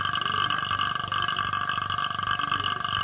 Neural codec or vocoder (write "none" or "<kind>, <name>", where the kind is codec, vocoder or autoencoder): none